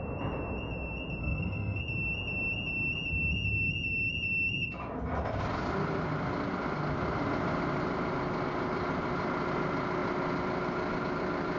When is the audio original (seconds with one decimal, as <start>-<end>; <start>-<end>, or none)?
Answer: 0.0-1.2; 1.8-11.6